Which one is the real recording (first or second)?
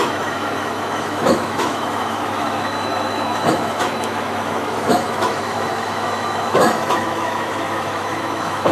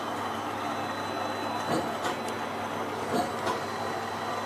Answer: second